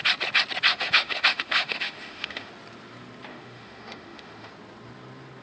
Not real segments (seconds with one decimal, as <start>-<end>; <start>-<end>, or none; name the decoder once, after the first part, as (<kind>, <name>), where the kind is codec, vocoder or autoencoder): 0.7-2.5 (autoencoder, DAC-VAE); 3.3-4.5